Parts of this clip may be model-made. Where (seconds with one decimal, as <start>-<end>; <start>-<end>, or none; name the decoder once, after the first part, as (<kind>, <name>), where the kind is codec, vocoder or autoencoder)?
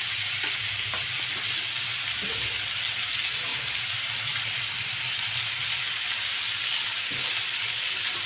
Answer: 3.5-5.8 (vocoder, BigVGAN v2)